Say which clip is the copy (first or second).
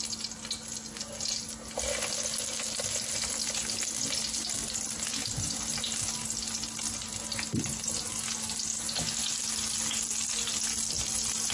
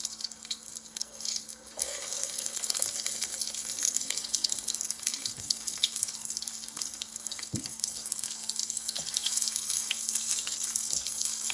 second